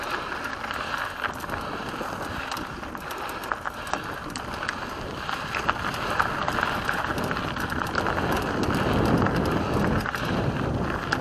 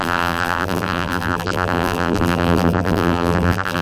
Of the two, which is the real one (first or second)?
first